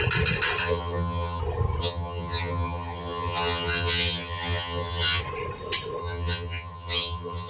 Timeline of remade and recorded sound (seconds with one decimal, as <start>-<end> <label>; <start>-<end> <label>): 0.0-0.6 recorded; 0.6-1.4 remade; 1.4-1.8 recorded; 1.8-5.2 remade; 5.2-6.0 recorded; 6.0-7.5 remade